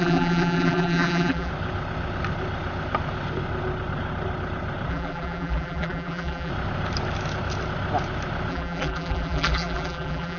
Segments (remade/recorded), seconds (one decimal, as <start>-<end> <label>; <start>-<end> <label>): 0.0-1.5 remade; 1.5-4.9 recorded; 4.9-6.5 remade; 6.5-8.5 recorded; 8.5-10.4 remade